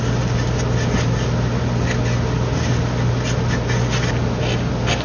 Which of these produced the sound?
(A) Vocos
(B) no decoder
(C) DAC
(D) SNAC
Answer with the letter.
B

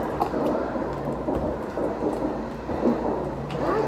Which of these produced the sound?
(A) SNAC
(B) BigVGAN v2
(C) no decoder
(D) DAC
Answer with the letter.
B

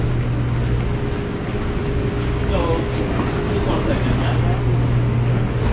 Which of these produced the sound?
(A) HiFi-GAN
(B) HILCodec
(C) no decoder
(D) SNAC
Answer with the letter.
C